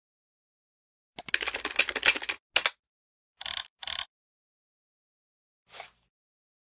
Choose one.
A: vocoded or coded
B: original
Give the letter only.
B